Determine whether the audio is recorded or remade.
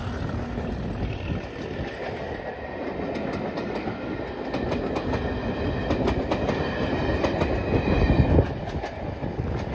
recorded